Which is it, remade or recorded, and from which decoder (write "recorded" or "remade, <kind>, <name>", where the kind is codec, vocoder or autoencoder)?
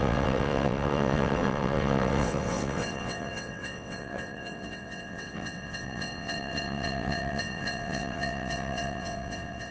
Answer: remade, vocoder, WaveNeXt